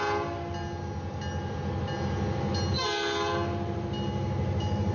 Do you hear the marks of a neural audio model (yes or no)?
no